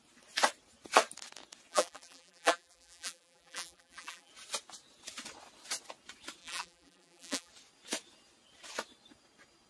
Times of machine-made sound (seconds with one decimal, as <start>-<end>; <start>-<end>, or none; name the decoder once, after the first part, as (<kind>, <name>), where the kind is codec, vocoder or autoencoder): 1.7-4.3 (vocoder, BigVGAN v2); 6.4-7.5